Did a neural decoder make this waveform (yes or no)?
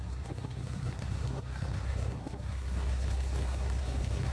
yes